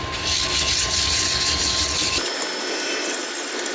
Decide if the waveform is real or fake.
real